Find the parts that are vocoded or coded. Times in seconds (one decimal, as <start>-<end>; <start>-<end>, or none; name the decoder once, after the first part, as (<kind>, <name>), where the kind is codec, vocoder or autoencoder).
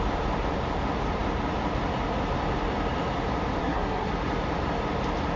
3.6-4.1 (codec, SNAC)